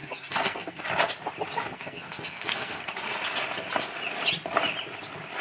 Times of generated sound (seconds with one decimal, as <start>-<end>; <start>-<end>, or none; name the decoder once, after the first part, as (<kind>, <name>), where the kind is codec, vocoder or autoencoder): 0.0-0.8 (codec, SNAC); 1.7-2.9